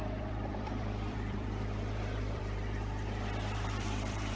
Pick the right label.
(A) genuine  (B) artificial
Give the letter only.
B